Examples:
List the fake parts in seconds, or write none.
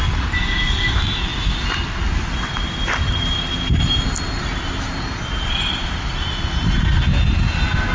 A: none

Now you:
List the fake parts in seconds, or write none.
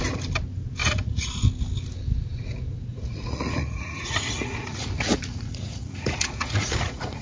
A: 0.8-1.4 (vocoder, Vocos); 2.9-7.2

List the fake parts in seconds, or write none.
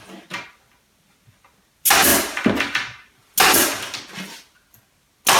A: none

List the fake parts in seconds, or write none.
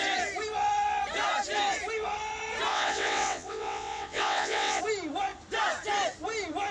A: 2.7-4.8 (vocoder, WaveNeXt)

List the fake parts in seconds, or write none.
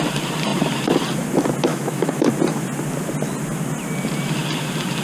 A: 1.7-2.3 (autoencoder, DAC-VAE)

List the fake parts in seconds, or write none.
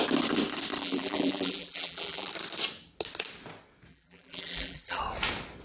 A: 0.8-2.3 (vocoder, BigVGAN v2); 3.9-5.0